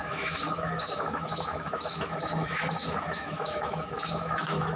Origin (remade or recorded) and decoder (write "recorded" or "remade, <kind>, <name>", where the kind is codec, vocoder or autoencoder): remade, autoencoder, DAC-VAE